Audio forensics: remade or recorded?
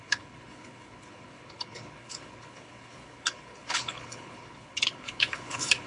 remade